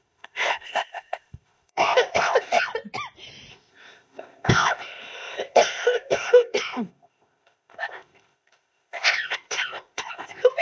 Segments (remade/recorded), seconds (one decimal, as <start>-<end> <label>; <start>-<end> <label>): 0.0-2.7 remade; 2.7-3.5 recorded; 3.5-10.6 remade